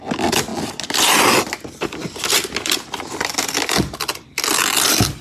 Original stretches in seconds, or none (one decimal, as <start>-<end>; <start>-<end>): 0.5-1.4